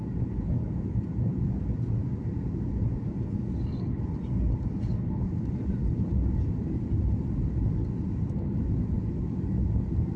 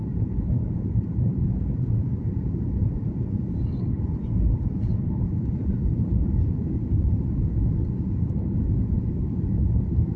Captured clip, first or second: first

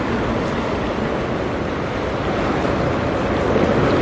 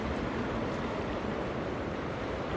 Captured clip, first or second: first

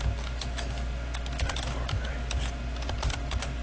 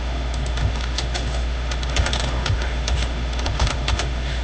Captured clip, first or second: first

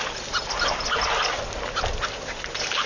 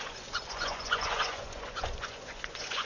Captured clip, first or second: first